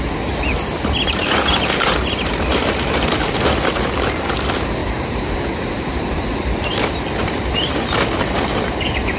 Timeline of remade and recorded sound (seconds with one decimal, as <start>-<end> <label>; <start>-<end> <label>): 0.0-9.2 recorded